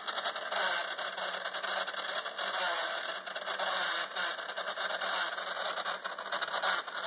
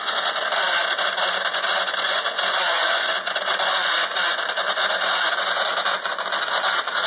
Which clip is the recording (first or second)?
first